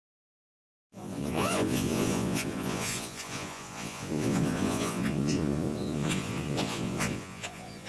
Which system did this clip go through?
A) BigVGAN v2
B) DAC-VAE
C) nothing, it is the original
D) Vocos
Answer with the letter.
D